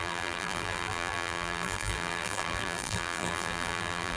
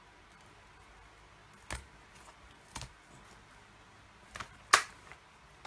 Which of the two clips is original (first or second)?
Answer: second